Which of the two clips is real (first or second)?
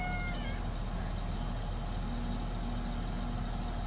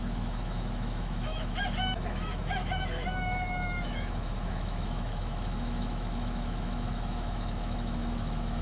first